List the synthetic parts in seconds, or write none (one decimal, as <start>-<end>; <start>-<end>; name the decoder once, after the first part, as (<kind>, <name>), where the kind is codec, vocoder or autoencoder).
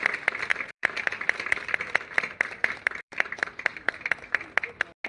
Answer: 0.5-1.8 (vocoder, BigVGAN v2); 2.6-4.4